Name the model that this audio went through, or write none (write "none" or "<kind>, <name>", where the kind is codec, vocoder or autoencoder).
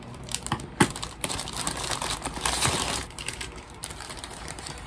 vocoder, BigVGAN v2